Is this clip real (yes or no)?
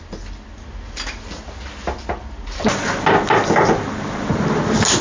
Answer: yes